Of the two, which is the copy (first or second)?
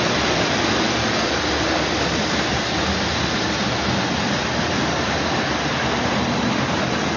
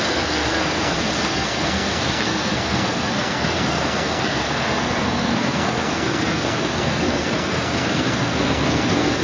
second